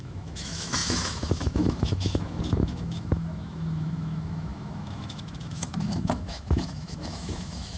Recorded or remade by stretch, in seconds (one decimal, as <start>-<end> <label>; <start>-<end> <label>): 0.0-7.8 remade